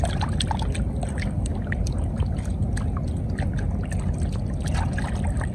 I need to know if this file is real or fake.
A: real